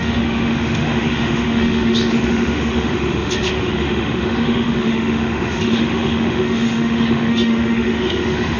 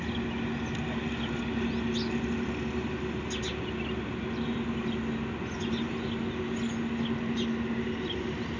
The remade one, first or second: first